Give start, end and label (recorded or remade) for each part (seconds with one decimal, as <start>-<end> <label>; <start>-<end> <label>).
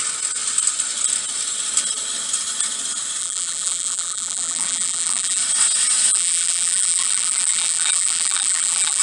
0.0-3.2 recorded; 3.2-5.4 remade; 5.4-6.1 recorded; 6.1-9.0 remade